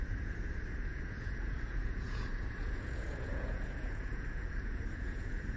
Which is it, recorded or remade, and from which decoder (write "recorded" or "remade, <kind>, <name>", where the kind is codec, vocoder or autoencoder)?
remade, vocoder, Vocos